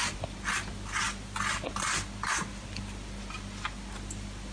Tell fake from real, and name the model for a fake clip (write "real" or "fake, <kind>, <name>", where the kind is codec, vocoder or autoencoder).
real